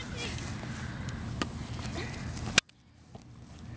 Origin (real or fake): real